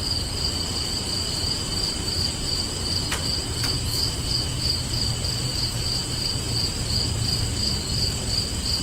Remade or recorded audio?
recorded